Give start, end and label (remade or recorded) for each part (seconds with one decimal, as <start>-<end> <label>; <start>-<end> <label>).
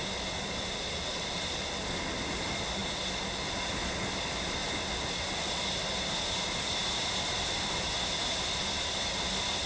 0.0-9.7 recorded